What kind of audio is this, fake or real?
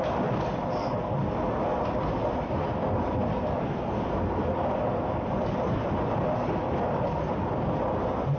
real